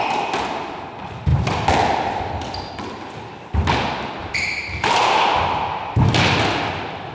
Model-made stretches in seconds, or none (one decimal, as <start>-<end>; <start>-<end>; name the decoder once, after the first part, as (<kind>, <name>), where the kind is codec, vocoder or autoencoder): 4.2-6.0 (vocoder, BigVGAN v2)